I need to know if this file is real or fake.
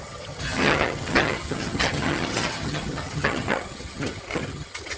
fake